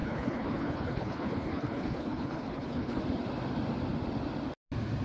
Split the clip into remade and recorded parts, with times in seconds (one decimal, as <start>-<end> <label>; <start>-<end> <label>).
0.0-3.0 remade; 3.0-5.0 recorded